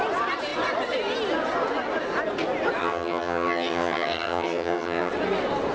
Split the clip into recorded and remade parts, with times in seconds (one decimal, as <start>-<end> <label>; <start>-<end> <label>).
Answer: 0.0-2.8 recorded; 2.8-5.1 remade; 5.1-5.7 recorded